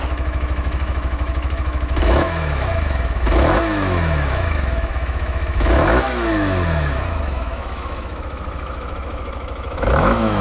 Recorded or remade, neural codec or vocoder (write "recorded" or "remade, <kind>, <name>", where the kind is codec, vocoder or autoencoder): remade, autoencoder, DAC-VAE